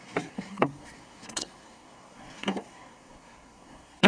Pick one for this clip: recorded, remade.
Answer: remade